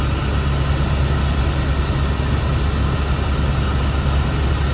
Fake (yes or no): no